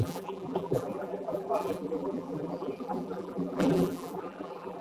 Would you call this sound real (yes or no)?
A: no